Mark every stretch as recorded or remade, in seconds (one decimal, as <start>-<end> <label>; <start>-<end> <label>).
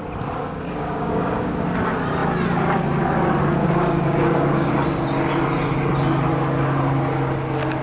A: 0.0-0.4 recorded; 0.4-1.6 remade; 1.6-3.6 recorded; 3.6-4.7 remade; 4.7-7.8 recorded